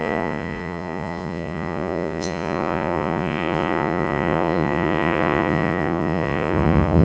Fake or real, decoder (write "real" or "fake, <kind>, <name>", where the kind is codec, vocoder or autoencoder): fake, vocoder, Vocos